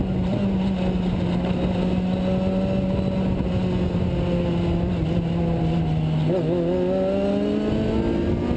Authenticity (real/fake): real